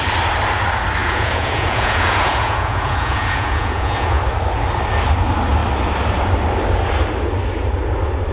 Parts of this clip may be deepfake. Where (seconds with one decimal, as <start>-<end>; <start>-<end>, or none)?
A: 1.0-4.2